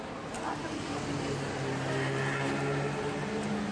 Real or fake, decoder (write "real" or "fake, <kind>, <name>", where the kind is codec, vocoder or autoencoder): real